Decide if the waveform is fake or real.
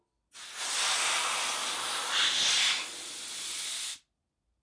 real